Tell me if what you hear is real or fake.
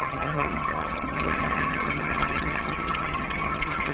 fake